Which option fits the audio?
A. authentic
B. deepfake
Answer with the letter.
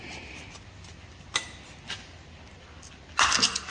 A